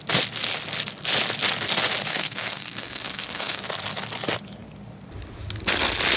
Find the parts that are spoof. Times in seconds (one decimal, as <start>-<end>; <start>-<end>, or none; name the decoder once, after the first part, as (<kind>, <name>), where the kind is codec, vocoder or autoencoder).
2.1-3.6 (codec, SNAC)